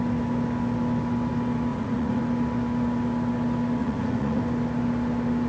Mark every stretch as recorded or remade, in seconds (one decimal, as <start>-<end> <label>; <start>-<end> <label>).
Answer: 0.0-1.7 recorded; 1.7-2.2 remade; 2.2-3.8 recorded; 3.8-4.4 remade; 4.4-5.5 recorded